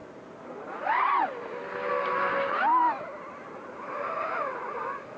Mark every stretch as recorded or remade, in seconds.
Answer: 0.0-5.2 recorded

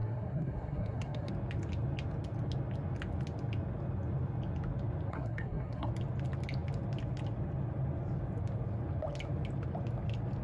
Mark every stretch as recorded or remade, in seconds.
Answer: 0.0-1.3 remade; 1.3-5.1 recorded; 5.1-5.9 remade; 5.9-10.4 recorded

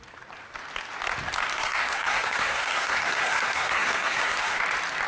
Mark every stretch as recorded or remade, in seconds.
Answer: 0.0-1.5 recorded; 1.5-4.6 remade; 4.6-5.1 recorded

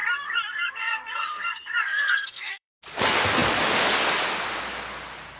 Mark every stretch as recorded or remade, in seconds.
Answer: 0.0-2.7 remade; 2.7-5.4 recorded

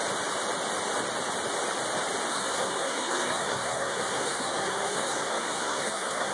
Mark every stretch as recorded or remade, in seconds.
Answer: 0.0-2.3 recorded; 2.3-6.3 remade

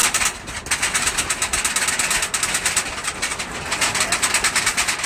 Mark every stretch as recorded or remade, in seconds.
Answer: 0.0-5.1 recorded